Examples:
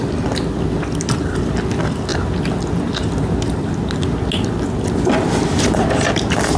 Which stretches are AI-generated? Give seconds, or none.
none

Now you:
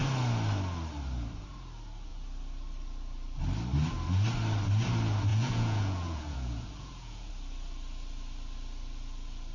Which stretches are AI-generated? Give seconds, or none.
5.3-7.3 (vocoder, Vocos)